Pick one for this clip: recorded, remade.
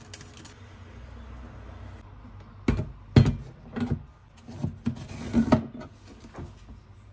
recorded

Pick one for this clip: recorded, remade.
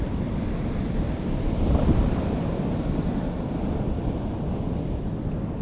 remade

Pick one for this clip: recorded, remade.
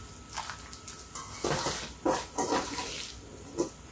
recorded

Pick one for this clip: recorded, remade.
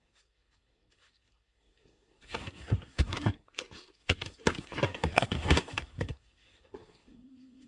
remade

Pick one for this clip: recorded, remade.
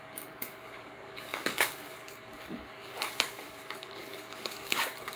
remade